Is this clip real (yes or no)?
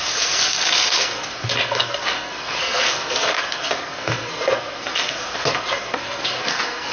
no